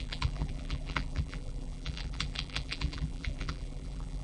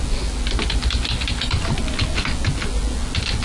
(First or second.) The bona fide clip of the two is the second